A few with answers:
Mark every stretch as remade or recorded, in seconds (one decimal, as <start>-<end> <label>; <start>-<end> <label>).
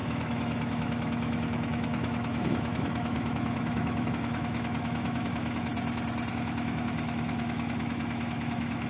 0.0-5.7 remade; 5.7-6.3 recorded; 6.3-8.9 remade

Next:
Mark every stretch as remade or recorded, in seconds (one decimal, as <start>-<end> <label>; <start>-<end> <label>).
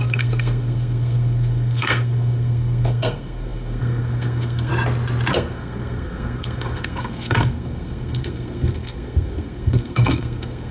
0.0-4.7 remade; 4.7-5.3 recorded; 5.3-10.7 remade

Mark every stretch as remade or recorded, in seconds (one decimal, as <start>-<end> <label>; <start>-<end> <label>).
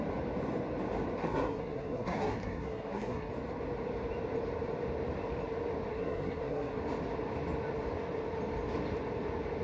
0.0-1.2 recorded; 1.2-3.3 remade; 3.3-5.9 recorded; 5.9-6.8 remade; 6.8-9.6 recorded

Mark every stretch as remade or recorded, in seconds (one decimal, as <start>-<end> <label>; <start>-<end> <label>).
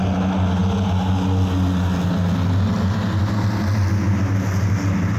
0.0-5.2 recorded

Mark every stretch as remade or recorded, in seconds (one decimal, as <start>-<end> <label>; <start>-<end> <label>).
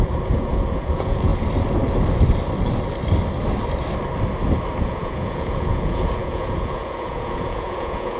0.0-1.3 remade; 1.3-4.8 recorded; 4.8-8.2 remade